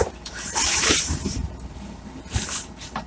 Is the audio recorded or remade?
remade